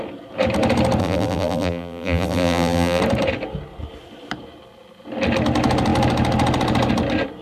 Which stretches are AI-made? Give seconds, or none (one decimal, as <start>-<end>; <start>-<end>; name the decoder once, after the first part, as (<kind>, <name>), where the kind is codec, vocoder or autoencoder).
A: 1.0-3.0 (vocoder, BigVGAN v2)